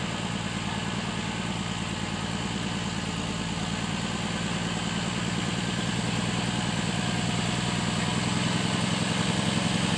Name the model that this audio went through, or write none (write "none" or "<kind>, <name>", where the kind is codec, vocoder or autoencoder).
none